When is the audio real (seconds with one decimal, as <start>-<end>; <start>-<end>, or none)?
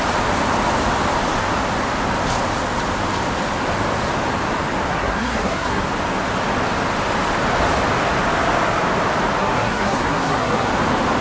0.0-4.9; 5.8-9.4; 10.7-11.2